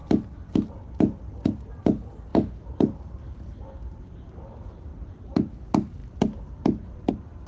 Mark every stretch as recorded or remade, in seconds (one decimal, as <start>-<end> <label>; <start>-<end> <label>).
0.0-1.8 remade; 1.8-2.3 recorded; 2.3-4.0 remade; 4.0-4.9 recorded; 4.9-5.5 remade; 5.5-6.0 recorded; 6.0-7.1 remade; 7.1-7.5 recorded